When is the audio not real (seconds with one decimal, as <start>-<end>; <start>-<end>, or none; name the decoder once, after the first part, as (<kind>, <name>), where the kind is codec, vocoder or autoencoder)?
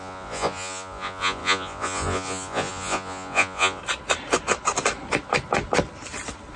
0.0-3.8 (vocoder, Vocos)